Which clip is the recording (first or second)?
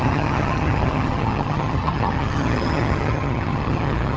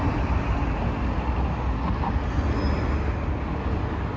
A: second